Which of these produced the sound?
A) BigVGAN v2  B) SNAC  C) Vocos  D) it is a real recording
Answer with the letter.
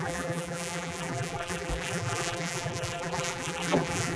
A